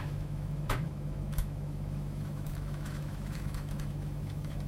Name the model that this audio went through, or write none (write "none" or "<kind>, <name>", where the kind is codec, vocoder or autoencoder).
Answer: autoencoder, DAC-VAE